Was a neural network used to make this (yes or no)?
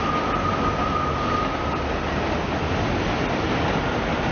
no